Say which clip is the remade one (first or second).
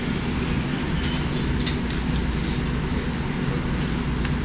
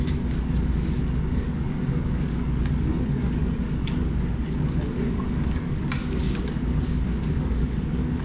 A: second